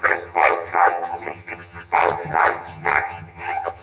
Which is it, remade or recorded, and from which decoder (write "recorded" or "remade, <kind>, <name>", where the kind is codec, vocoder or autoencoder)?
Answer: remade, vocoder, HiFi-GAN